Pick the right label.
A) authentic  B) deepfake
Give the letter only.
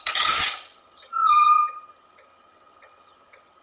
B